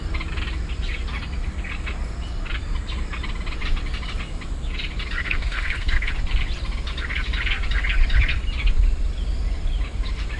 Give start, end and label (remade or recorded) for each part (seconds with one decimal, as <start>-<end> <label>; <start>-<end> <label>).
0.0-5.2 recorded; 5.2-6.1 remade; 6.1-10.4 recorded